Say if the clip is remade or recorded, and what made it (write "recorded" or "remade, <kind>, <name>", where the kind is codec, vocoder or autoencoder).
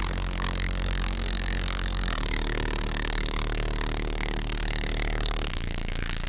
remade, codec, DAC